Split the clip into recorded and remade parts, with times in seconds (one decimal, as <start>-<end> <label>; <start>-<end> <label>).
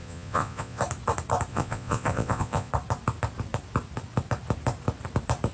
0.0-0.8 remade; 0.8-1.5 recorded; 1.5-2.7 remade; 2.7-5.5 recorded